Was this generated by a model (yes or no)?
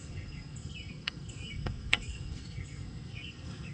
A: yes